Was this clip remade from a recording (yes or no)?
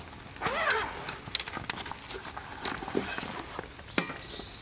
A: no